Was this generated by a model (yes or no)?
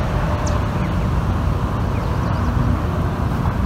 no